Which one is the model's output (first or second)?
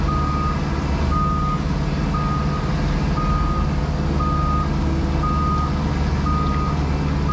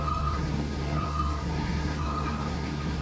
second